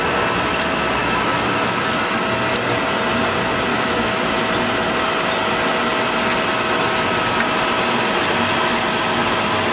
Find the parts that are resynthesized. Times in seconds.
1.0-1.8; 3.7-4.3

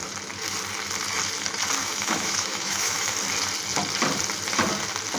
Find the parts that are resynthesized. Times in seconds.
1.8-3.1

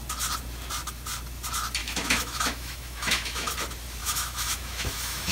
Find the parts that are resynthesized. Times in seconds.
1.8-3.5; 4.0-5.3

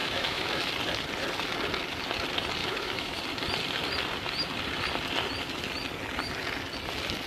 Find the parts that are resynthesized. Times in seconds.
0.0-0.7; 2.6-3.2

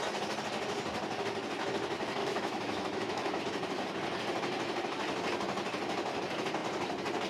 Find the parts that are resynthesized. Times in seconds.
2.2-3.4

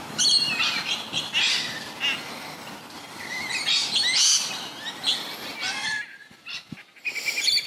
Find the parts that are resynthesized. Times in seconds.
none

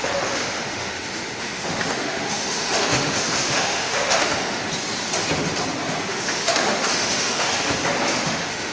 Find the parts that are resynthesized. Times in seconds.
0.0-4.6; 6.1-7.5; 8.1-8.7

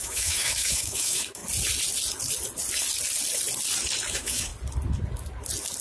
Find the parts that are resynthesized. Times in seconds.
0.0-1.4; 4.1-4.5